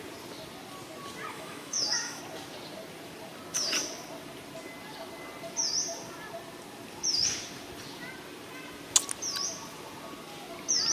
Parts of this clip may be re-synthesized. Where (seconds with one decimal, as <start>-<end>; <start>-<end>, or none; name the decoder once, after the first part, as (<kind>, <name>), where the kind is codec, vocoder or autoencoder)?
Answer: 1.3-2.2 (autoencoder, DAC-VAE)